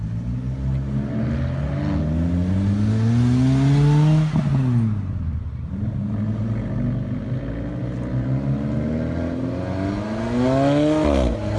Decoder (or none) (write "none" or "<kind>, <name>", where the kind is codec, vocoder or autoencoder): none